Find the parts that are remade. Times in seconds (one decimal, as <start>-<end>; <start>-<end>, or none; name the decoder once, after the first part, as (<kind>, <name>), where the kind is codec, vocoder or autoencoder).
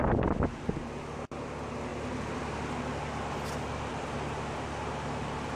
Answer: none